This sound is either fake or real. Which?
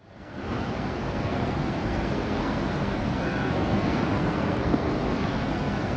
fake